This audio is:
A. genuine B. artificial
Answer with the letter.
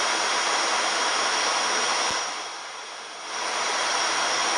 A